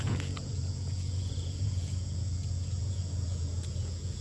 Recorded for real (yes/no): no